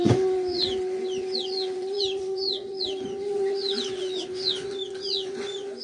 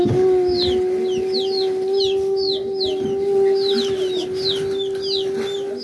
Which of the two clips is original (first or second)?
second